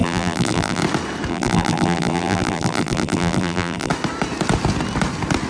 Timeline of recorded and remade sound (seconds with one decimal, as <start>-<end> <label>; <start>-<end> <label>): 0.0-0.8 remade; 0.8-1.3 recorded; 1.3-3.9 remade; 3.9-5.5 recorded